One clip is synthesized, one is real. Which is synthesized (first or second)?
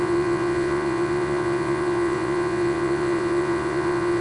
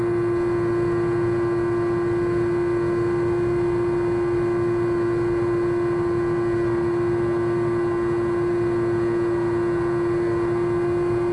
first